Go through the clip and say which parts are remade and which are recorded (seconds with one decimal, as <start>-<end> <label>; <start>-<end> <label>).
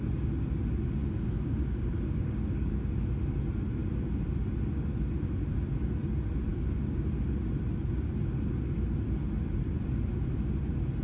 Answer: 0.0-1.0 recorded; 1.0-2.7 remade; 2.7-6.5 recorded; 6.5-7.1 remade; 7.1-11.0 recorded